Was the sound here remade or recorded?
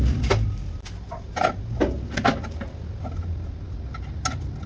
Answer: recorded